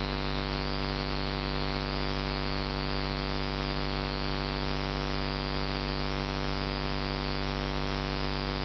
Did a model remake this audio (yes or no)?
yes